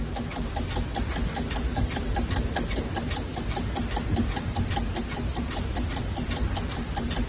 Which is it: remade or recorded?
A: recorded